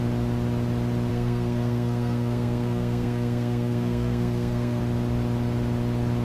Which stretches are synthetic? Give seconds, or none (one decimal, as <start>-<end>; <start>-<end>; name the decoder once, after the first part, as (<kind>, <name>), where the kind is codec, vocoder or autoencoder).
1.1-4.8 (codec, SNAC)